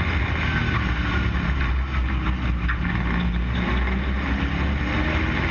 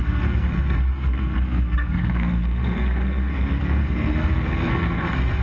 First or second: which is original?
first